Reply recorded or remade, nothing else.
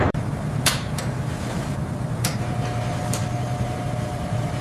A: remade